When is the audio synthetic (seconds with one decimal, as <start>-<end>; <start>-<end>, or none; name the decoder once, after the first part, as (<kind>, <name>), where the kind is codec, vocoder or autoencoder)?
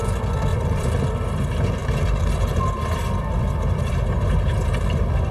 0.5-1.1 (vocoder, BigVGAN v2); 1.8-5.3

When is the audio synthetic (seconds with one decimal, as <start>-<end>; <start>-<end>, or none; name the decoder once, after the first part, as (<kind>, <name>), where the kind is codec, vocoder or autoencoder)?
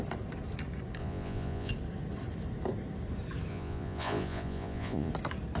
1.0-1.7 (vocoder, Vocos); 3.5-5.1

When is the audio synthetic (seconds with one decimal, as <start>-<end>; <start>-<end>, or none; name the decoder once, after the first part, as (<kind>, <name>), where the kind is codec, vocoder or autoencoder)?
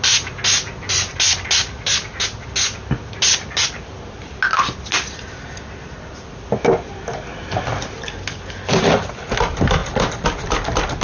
none